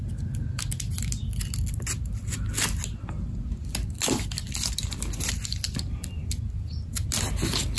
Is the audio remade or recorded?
recorded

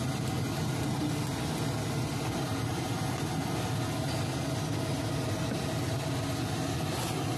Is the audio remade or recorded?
recorded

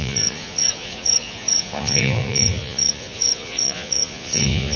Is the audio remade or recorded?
remade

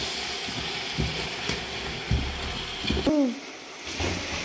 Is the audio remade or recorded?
recorded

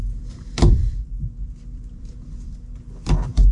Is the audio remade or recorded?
remade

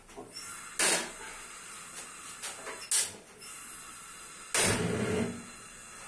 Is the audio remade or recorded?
recorded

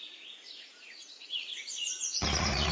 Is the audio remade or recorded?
remade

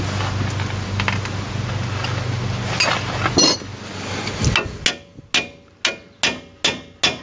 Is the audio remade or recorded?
recorded